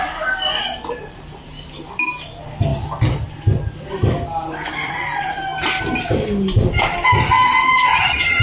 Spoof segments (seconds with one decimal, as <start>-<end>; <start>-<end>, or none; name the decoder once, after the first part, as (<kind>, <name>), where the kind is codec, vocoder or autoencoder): 7.9-8.4 (vocoder, HiFi-GAN)